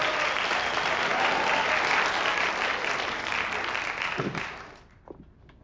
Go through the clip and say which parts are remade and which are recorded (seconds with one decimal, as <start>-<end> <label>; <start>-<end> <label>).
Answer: 0.0-5.6 recorded